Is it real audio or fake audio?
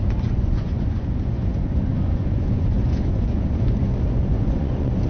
fake